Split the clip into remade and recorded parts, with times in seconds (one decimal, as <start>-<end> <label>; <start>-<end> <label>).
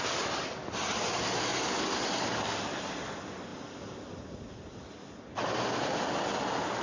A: 0.0-6.8 recorded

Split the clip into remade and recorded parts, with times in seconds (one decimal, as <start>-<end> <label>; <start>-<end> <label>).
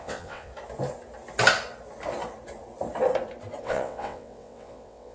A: 0.0-0.5 remade; 0.5-3.6 recorded; 3.6-5.1 remade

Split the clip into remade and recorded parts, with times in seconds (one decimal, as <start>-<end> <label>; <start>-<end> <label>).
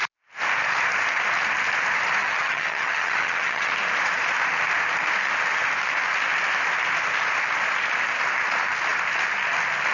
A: 0.0-2.2 recorded; 2.2-3.7 remade; 3.7-9.9 recorded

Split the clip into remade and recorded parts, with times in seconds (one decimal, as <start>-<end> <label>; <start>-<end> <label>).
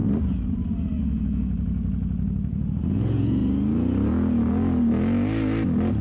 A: 0.0-1.0 recorded; 1.0-3.4 remade; 3.4-6.0 recorded